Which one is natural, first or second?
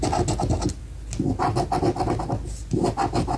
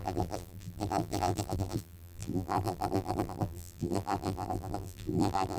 first